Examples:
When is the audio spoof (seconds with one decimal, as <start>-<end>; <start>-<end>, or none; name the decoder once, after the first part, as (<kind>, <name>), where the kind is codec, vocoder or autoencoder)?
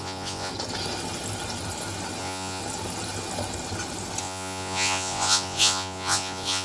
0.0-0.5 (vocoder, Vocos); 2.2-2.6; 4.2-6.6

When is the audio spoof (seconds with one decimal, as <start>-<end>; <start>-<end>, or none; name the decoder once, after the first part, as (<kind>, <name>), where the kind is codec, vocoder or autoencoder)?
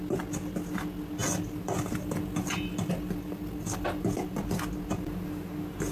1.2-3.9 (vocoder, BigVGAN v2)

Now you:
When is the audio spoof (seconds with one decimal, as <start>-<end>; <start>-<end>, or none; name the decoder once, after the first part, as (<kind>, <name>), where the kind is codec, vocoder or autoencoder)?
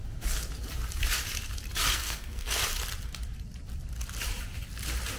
1.9-2.6 (codec, SNAC)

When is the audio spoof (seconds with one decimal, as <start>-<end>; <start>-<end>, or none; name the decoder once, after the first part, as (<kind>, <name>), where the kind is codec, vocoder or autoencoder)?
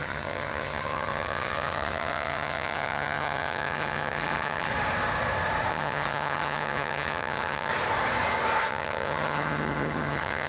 0.0-4.7 (vocoder, HiFi-GAN); 5.7-7.7; 8.7-10.5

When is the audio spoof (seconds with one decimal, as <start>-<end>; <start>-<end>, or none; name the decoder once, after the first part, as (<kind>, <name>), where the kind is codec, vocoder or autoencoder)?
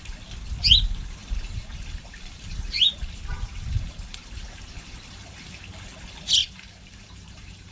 1.2-5.6 (vocoder, BigVGAN v2); 6.4-7.7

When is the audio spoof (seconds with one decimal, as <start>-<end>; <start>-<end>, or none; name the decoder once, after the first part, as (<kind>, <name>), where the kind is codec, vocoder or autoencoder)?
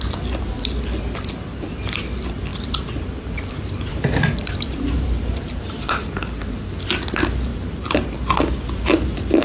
3.9-6.7 (vocoder, BigVGAN v2); 7.5-8.1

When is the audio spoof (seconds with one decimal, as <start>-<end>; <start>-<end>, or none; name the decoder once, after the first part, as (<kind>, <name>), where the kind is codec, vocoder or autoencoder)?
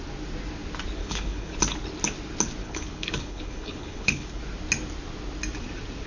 1.0-1.6 (codec, HILCodec); 2.6-4.4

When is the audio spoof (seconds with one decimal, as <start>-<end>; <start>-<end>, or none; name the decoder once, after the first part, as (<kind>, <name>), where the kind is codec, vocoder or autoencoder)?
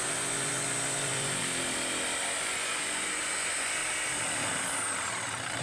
0.0-1.4 (vocoder, Vocos); 2.4-3.8